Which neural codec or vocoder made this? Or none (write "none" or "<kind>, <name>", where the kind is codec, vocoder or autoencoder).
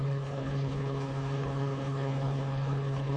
codec, HILCodec